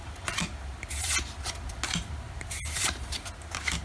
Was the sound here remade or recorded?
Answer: recorded